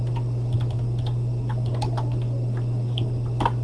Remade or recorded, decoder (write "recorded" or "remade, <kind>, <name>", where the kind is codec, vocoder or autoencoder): recorded